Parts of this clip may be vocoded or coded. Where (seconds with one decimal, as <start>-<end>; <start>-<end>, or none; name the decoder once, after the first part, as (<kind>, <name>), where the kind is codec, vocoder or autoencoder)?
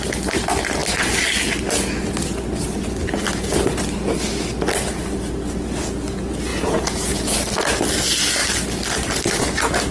6.5-7.4 (vocoder, Vocos)